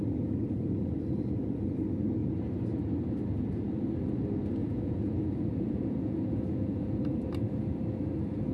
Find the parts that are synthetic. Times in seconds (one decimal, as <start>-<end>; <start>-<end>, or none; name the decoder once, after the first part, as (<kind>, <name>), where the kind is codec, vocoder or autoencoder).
4.6-7.0 (vocoder, Vocos)